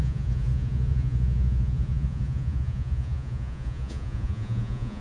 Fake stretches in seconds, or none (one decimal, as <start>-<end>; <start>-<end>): 0.0-5.0

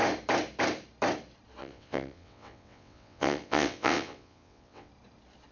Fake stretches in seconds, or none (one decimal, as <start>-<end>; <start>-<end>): 1.6-4.9